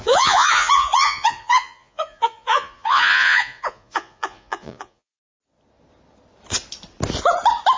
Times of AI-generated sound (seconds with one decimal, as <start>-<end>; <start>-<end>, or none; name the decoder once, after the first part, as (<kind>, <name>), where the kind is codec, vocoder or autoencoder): 0.0-5.1 (vocoder, Vocos)